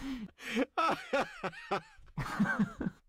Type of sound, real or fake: fake